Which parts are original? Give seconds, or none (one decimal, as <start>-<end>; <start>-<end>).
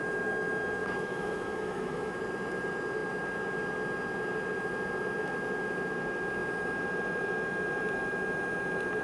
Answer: 0.0-0.8; 2.2-9.0